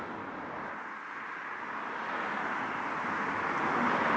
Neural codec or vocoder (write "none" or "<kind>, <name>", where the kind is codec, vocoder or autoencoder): none